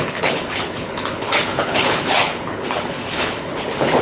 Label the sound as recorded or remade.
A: remade